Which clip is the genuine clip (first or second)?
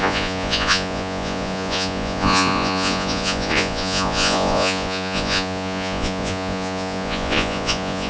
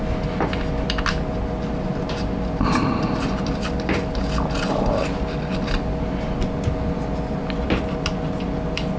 second